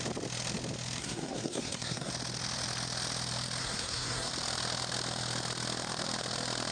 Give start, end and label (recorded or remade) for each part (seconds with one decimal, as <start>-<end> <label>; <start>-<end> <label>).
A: 0.0-1.0 recorded; 1.0-2.1 remade; 2.1-3.6 recorded; 3.6-4.3 remade; 4.3-6.7 recorded